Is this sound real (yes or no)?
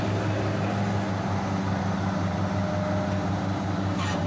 yes